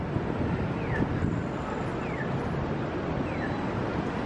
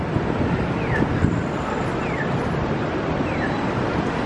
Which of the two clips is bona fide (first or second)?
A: first